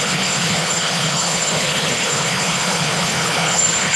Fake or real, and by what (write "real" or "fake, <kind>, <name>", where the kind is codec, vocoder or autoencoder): fake, codec, HILCodec